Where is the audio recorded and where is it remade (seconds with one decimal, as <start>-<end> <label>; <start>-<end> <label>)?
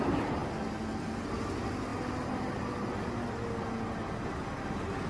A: 0.0-5.1 recorded